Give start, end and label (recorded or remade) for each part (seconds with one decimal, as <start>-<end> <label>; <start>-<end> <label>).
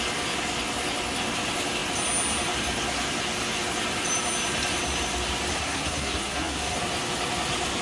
0.0-5.5 recorded; 5.5-6.8 remade; 6.8-7.8 recorded